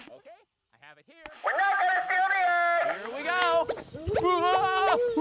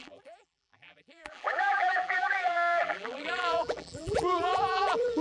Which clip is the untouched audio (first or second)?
first